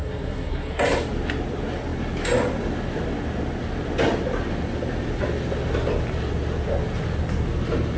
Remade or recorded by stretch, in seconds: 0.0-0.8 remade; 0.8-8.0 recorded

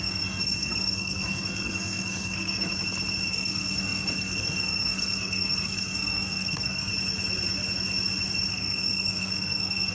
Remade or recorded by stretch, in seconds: 0.0-2.7 remade; 2.7-3.3 recorded; 3.3-6.9 remade; 6.9-8.5 recorded; 8.5-9.9 remade

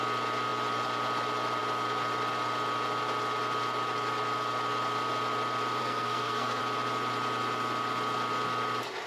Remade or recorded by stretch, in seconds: 0.0-5.8 recorded; 5.8-6.6 remade; 6.6-9.1 recorded

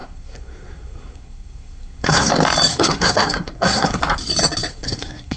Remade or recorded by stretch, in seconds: 0.0-2.3 remade; 2.3-2.7 recorded; 2.7-4.0 remade; 4.0-4.7 recorded; 4.7-5.4 remade

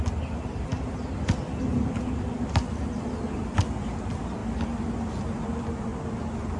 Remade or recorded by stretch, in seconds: 0.0-6.6 recorded

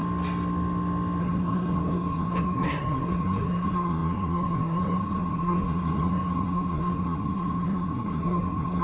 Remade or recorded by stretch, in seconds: 0.0-1.2 recorded; 1.2-8.8 remade

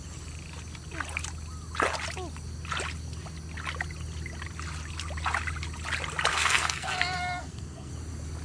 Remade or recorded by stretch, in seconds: 0.0-6.3 recorded; 6.3-7.9 remade; 7.9-8.4 recorded

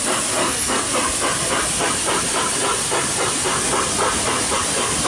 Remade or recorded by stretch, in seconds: 0.0-0.4 recorded; 0.4-0.9 remade; 0.9-5.1 recorded